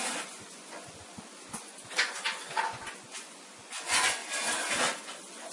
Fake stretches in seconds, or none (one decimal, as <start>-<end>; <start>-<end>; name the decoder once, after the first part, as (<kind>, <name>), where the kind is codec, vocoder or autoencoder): 0.0-4.2 (vocoder, Vocos); 5.0-5.5